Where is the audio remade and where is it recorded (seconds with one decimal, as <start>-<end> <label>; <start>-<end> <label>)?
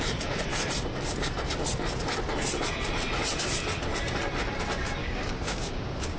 0.0-5.0 recorded; 5.0-6.2 remade